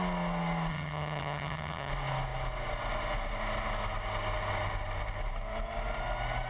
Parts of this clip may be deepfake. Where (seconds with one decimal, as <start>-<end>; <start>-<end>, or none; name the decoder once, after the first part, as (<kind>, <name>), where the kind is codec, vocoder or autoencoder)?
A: 0.7-1.9 (vocoder, HiFi-GAN)